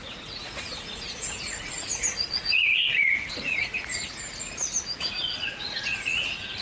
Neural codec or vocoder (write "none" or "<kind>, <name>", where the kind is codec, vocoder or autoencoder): vocoder, Vocos